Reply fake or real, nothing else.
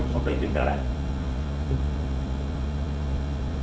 fake